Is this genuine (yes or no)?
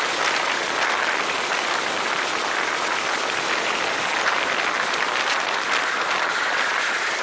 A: yes